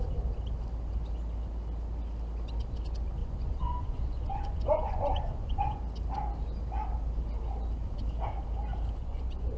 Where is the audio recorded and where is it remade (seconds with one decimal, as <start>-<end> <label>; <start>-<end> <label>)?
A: 0.0-3.2 recorded; 3.2-5.8 remade; 5.8-9.0 recorded; 9.0-9.6 remade